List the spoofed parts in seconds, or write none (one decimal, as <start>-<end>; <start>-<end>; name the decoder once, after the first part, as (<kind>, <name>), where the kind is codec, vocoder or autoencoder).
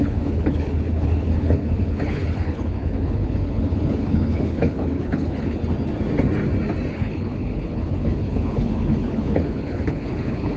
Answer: 0.0-5.6 (codec, HILCodec); 6.9-10.6